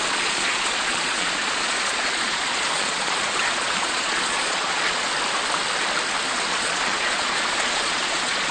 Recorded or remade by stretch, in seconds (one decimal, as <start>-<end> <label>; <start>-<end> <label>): 0.0-5.1 remade; 5.1-6.5 recorded; 6.5-8.5 remade